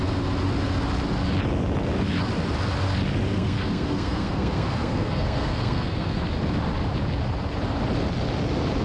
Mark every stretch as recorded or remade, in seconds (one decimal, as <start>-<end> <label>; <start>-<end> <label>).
0.0-3.3 recorded; 3.3-6.2 remade; 6.2-8.8 recorded

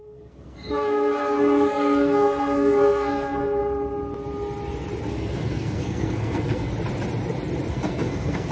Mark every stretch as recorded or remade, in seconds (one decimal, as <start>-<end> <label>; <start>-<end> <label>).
0.0-3.6 remade; 3.6-5.1 recorded; 5.1-6.7 remade; 6.7-7.7 recorded; 7.7-8.5 remade